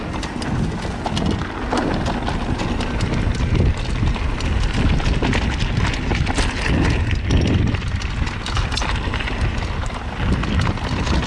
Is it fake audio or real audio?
real